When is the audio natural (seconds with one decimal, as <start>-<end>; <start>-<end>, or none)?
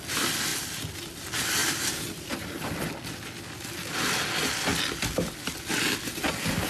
0.0-0.5; 1.2-1.6; 4.1-4.7; 5.9-6.7